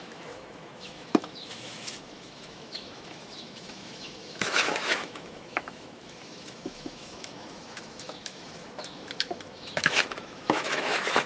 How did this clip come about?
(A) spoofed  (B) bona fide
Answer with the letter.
A